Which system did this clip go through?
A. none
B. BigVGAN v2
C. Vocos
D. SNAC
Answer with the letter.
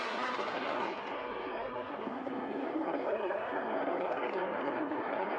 D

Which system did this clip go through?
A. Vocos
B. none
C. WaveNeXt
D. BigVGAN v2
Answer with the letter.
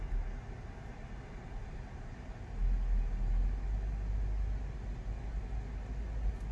B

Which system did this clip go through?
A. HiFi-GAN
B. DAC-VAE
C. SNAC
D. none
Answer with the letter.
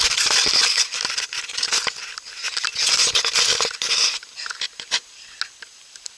D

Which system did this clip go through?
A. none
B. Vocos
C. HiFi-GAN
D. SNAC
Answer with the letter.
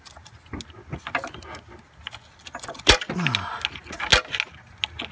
A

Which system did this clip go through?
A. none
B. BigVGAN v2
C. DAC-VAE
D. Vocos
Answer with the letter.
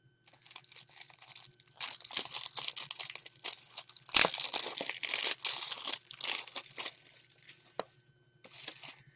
A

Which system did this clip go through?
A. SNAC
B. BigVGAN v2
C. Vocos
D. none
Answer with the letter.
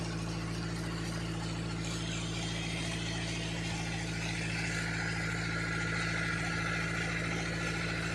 D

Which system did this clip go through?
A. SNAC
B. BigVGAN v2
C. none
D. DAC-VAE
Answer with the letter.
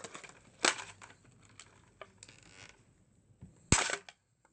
C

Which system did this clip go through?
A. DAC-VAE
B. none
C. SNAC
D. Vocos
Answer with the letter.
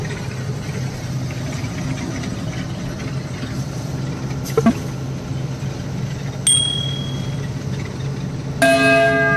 B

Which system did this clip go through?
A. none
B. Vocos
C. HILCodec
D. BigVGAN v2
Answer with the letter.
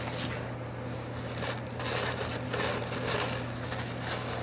A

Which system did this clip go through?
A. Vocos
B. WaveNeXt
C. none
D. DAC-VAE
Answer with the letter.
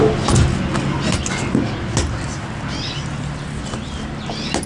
C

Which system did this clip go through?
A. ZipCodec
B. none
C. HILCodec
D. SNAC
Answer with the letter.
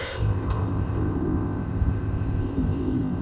A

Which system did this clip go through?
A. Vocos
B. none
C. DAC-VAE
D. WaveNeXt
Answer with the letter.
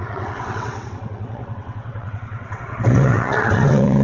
D